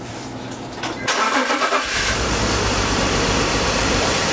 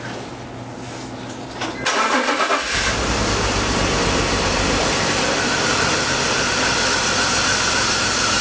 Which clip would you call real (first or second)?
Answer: second